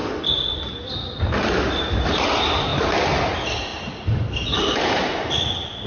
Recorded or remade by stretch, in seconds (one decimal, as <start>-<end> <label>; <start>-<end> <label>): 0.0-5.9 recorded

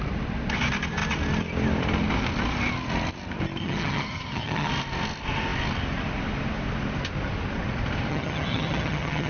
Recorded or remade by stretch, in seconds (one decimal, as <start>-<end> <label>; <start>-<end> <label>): 0.0-3.6 recorded; 3.6-4.7 remade; 4.7-8.1 recorded; 8.1-9.3 remade

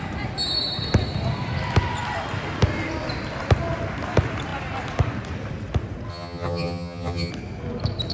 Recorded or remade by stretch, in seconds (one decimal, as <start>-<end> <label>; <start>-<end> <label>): 0.0-6.1 recorded; 6.1-7.3 remade; 7.3-8.1 recorded

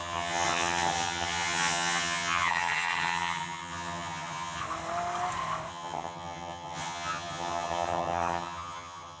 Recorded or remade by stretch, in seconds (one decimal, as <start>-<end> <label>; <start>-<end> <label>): 0.0-4.6 remade; 4.6-5.7 recorded; 5.7-9.2 remade

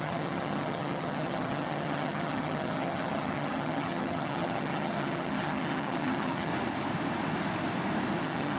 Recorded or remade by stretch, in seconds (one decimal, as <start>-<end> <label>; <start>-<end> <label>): 0.0-6.5 remade; 6.5-8.2 recorded; 8.2-8.6 remade

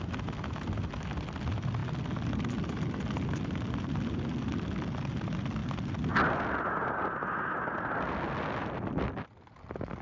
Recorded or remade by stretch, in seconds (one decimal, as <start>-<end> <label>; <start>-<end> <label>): 0.0-10.0 recorded